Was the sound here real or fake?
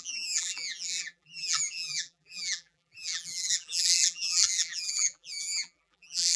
fake